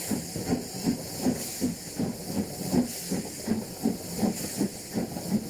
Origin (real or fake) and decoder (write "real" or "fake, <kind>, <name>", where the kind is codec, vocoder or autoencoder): real